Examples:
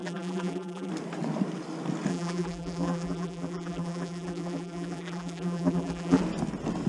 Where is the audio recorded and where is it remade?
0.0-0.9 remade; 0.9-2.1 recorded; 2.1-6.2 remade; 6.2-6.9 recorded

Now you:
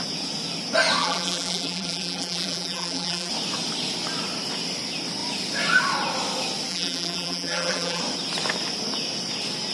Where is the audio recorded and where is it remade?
0.0-1.0 recorded; 1.0-3.3 remade; 3.3-6.7 recorded; 6.7-8.0 remade; 8.0-9.7 recorded

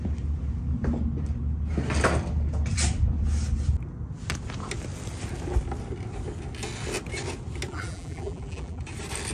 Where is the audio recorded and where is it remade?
0.0-7.7 recorded; 7.7-8.8 remade; 8.8-9.3 recorded

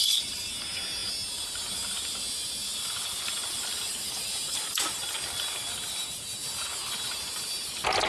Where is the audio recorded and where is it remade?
0.0-8.1 recorded

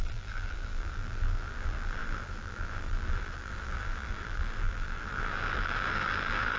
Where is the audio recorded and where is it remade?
0.0-6.6 remade

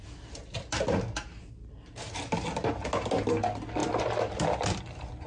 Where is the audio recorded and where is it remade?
0.0-3.8 recorded; 3.8-4.8 remade; 4.8-5.3 recorded

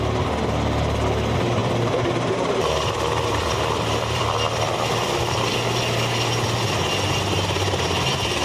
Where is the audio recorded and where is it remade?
0.0-1.6 recorded; 1.6-5.5 remade; 5.5-8.4 recorded